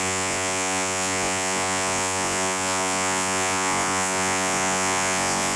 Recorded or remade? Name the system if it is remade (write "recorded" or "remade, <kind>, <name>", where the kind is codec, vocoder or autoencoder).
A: remade, vocoder, Vocos